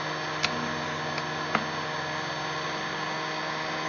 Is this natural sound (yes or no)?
yes